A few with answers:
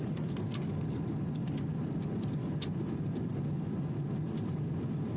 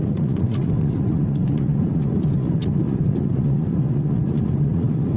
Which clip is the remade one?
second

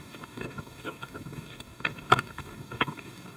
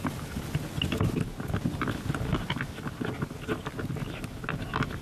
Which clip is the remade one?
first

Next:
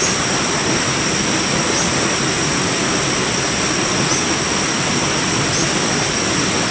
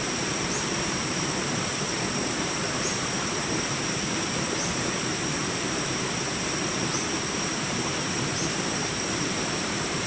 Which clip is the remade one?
second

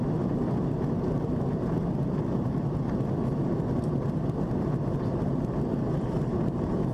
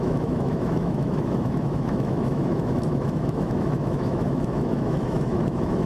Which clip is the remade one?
second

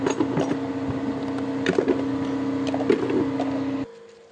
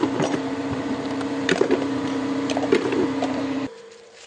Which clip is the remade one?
second